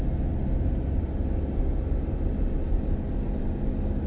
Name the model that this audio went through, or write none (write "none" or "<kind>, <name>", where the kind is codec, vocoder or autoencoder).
none